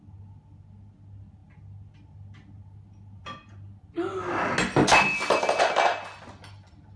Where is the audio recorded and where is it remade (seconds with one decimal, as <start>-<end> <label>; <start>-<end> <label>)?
0.0-7.0 recorded